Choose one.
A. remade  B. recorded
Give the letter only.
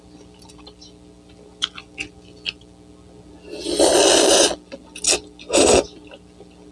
B